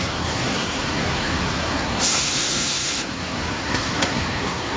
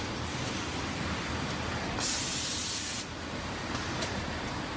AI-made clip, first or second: first